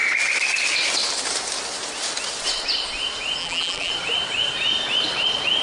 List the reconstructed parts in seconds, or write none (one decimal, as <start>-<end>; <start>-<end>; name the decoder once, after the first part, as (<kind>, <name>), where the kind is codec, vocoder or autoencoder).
3.4-3.9 (vocoder, BigVGAN v2)